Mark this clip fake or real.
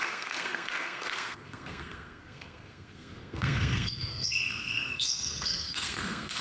fake